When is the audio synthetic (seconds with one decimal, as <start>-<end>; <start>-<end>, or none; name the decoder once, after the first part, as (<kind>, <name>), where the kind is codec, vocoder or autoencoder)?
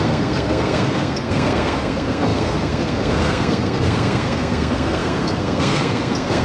0.0-6.4 (codec, SNAC)